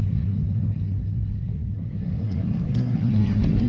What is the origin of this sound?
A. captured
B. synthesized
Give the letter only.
B